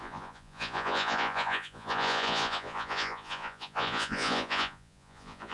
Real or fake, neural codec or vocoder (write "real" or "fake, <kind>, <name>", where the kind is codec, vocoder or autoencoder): fake, vocoder, Vocos